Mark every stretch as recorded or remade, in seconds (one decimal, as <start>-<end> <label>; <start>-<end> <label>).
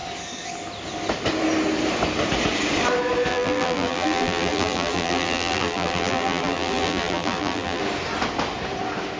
0.0-3.3 recorded; 3.3-7.8 remade; 7.8-9.2 recorded